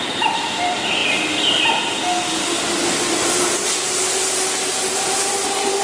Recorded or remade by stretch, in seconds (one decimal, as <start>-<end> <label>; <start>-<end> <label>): 0.0-5.8 recorded